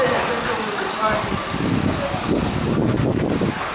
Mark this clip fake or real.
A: real